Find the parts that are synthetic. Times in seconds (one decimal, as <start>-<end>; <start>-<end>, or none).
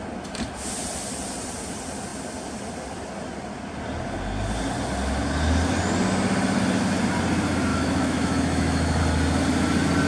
7.7-9.0